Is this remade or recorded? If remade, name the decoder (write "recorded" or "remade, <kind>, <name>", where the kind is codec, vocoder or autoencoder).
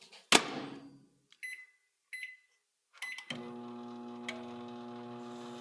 recorded